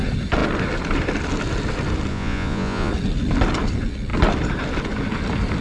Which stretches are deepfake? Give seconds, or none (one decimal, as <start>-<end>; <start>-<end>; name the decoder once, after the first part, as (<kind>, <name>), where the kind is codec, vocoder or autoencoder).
2.1-2.9 (vocoder, Vocos)